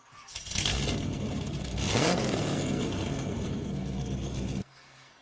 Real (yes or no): no